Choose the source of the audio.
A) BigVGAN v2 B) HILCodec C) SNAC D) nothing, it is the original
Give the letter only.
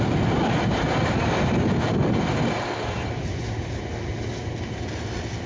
D